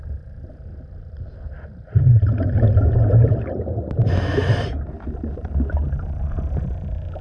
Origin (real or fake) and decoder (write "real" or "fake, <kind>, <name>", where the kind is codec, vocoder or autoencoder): real